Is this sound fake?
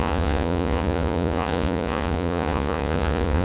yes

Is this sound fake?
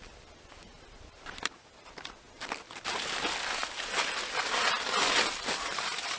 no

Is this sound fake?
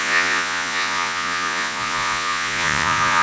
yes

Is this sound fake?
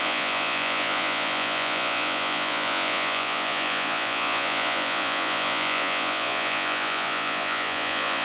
yes